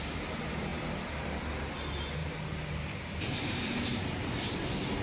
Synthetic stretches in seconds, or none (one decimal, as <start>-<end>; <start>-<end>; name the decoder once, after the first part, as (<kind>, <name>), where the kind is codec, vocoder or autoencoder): 2.2-4.1 (vocoder, BigVGAN v2)